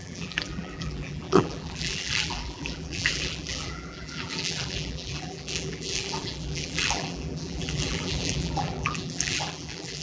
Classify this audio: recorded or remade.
remade